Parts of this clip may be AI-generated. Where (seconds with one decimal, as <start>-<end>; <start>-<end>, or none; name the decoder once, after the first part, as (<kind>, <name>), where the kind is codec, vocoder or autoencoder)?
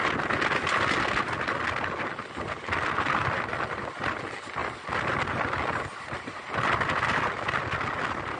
none